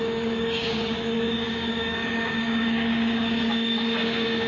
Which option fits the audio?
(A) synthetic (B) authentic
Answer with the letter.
A